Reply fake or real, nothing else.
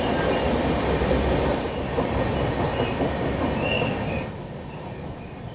real